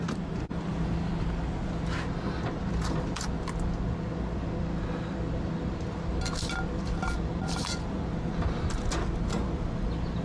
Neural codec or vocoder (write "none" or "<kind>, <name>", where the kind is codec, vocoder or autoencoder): none